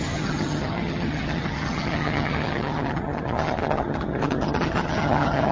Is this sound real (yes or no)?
no